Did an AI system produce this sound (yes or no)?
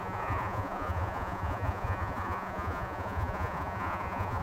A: yes